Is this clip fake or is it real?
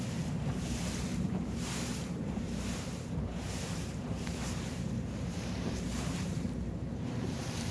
fake